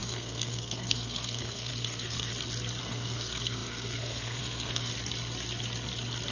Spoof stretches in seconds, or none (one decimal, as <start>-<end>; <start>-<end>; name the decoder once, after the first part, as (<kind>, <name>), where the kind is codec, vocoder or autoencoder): 0.0-2.3 (codec, SNAC); 2.8-4.9